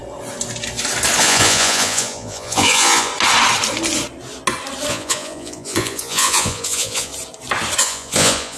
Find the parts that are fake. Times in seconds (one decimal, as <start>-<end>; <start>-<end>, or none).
1.2-3.1; 4.9-7.1; 7.8-8.6